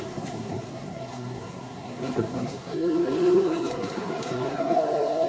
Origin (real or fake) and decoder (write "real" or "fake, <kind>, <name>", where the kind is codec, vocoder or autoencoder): fake, codec, SNAC